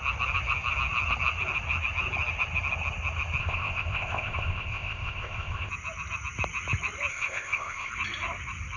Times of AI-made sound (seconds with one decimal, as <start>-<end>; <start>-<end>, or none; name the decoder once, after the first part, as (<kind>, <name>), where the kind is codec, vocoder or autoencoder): 3.4-5.7 (codec, ZipCodec); 7.1-7.9